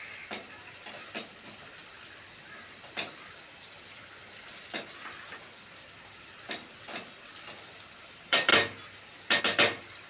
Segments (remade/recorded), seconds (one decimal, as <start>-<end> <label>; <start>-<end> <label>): 0.0-1.8 remade; 1.8-2.3 recorded; 2.3-8.5 remade; 8.5-9.4 recorded; 9.4-10.1 remade